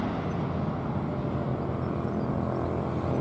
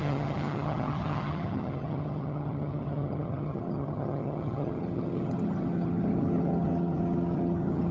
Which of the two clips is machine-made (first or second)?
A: second